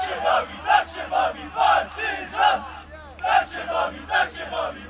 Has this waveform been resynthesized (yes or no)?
no